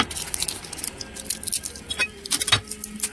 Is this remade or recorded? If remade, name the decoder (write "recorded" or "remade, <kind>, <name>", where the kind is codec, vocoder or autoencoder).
recorded